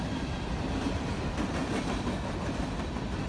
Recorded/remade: recorded